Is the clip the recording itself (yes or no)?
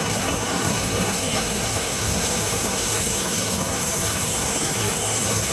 no